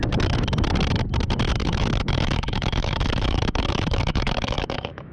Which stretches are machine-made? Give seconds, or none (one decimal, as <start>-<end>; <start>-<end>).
1.6-5.1